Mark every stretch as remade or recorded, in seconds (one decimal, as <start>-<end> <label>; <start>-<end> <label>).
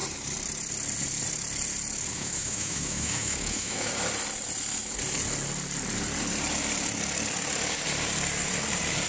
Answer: 0.0-2.1 recorded; 2.1-3.9 remade; 3.9-9.1 recorded